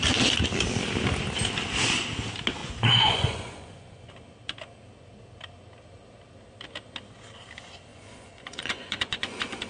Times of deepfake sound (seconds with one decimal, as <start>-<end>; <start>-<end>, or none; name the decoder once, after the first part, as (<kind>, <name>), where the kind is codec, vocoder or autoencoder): 2.6-4.1 (vocoder, Vocos); 7.9-9.7